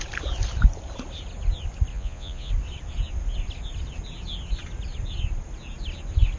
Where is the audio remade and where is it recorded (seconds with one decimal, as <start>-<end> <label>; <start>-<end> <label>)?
0.0-1.9 recorded; 1.9-2.5 remade; 2.5-6.4 recorded